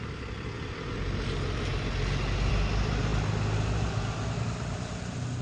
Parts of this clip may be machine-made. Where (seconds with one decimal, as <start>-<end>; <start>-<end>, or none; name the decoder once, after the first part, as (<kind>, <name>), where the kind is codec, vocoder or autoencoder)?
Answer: none